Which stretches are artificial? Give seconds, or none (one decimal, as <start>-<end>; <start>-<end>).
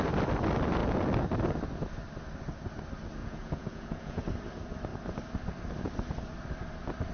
3.2-4.2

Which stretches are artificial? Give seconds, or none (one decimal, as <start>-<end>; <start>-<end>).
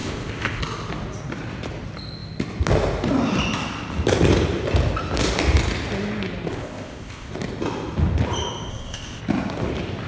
0.0-0.6; 6.5-7.3; 8.7-9.2